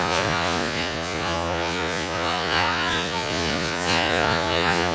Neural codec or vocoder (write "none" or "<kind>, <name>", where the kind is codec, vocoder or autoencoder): vocoder, Vocos